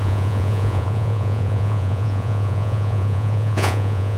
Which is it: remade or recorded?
remade